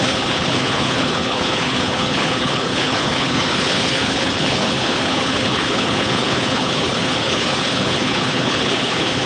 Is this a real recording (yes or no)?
no